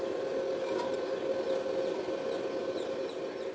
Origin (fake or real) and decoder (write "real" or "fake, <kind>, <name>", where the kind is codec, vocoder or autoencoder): real